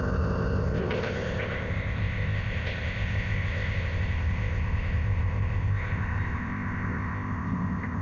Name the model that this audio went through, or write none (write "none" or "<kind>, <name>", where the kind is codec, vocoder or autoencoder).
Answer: codec, ZipCodec